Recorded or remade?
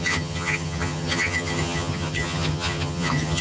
remade